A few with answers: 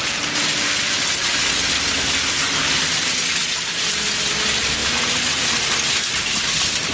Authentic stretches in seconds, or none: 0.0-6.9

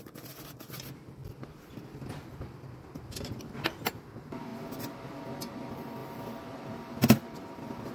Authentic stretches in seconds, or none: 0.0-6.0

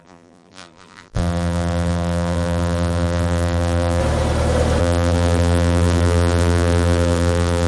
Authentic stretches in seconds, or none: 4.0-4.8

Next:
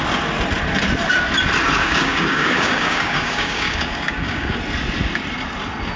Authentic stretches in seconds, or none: 0.0-1.8; 4.6-6.0

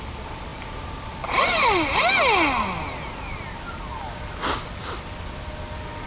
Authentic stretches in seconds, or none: 0.0-6.1

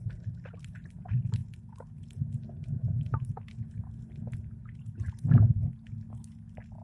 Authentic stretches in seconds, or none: 0.0-4.6; 5.2-6.8

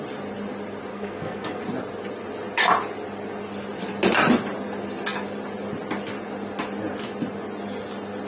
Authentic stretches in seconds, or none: 0.0-0.9; 1.6-8.3

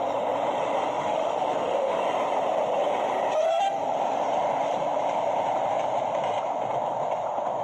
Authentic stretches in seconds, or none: 0.0-1.0; 2.0-7.6